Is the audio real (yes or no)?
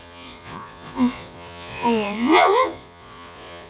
no